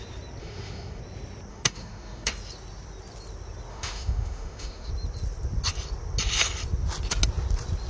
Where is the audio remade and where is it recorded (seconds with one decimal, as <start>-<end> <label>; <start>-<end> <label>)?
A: 0.0-0.4 recorded; 0.4-1.0 remade; 1.0-1.5 recorded; 1.5-2.3 remade; 2.3-3.7 recorded; 3.7-4.9 remade; 4.9-7.9 recorded